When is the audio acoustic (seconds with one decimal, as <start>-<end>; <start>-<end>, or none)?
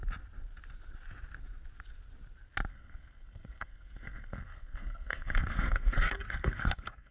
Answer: 0.0-2.7